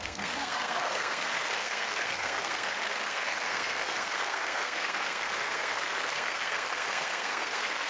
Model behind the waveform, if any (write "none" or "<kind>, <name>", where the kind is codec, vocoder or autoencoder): codec, SNAC